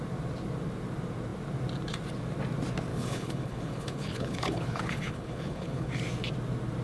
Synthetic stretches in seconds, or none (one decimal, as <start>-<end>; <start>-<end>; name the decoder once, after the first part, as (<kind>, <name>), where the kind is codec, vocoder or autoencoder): 2.9-5.9 (codec, HILCodec)